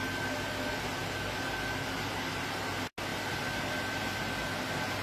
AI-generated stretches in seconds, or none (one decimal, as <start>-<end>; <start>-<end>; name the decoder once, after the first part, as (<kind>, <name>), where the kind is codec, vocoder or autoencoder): none